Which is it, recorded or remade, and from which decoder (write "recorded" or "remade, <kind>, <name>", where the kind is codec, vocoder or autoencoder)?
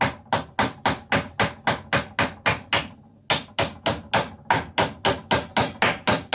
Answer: recorded